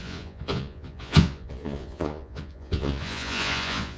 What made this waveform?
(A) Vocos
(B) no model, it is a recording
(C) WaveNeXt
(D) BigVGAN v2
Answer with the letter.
A